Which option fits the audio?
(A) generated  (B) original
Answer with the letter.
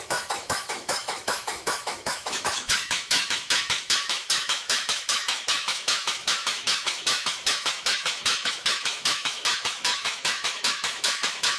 A